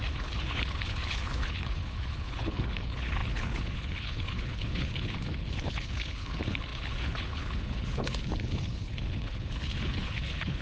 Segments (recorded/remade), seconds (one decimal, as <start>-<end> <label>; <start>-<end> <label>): 0.0-10.6 remade